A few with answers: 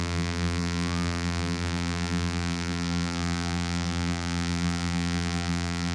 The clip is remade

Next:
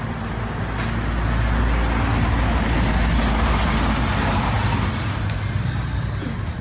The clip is recorded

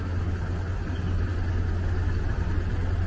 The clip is recorded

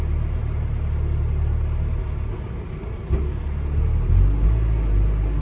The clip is recorded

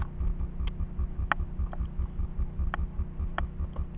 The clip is recorded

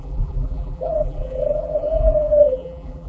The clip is remade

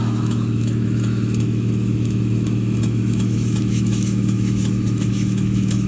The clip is remade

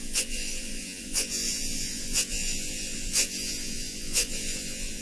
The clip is remade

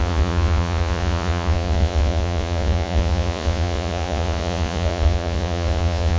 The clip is remade